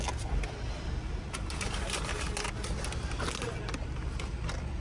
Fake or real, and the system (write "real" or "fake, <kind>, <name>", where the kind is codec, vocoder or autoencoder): real